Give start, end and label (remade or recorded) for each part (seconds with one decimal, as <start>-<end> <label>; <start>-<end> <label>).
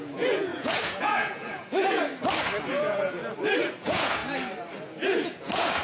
0.0-2.1 remade; 2.1-2.7 recorded; 2.7-3.2 remade; 3.2-3.7 recorded; 3.7-4.2 remade; 4.2-4.8 recorded; 4.8-5.8 remade